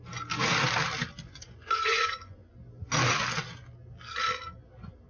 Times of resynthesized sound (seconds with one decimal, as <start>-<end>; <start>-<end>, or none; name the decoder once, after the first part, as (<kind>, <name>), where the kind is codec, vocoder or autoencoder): 1.3-2.5 (vocoder, Vocos)